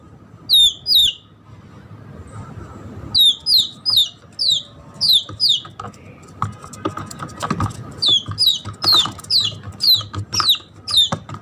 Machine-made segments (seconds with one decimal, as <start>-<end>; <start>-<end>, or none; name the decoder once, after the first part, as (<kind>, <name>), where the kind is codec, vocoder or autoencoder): none